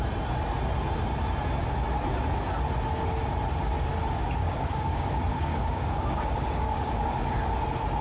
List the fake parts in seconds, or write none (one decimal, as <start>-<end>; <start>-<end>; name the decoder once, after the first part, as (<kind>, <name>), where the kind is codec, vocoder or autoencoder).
4.4-7.2 (codec, DAC)

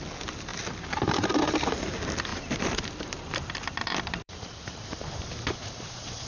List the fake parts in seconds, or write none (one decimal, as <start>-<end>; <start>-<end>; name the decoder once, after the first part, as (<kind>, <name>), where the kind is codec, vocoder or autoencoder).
2.3-6.3 (vocoder, BigVGAN v2)

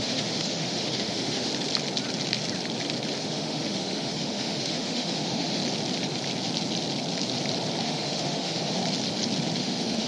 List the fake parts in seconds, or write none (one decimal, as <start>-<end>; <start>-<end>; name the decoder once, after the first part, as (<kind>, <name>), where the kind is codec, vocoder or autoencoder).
0.0-1.5 (autoencoder, DAC-VAE); 3.2-5.6; 7.8-8.8; 9.6-10.1

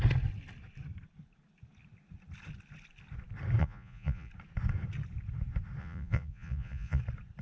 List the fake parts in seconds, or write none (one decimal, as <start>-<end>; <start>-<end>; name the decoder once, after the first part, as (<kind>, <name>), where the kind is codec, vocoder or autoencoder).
3.6-4.3 (vocoder, Vocos); 5.8-7.0